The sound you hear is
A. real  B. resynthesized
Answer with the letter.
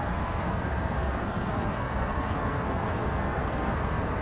B